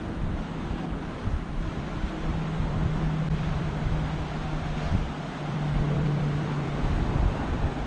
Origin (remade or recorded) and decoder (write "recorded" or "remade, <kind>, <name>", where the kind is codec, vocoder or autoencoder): remade, vocoder, BigVGAN v2